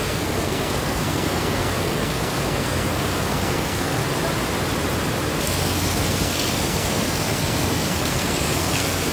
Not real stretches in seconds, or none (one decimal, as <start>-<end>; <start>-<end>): 0.0-4.0; 5.4-9.1